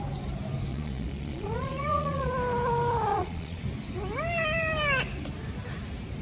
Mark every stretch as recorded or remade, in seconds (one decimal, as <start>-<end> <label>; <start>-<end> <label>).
0.0-0.7 recorded; 0.7-2.3 remade; 2.3-3.1 recorded; 3.1-3.6 remade; 3.6-6.2 recorded